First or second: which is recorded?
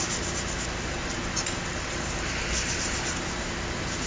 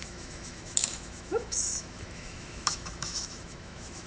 first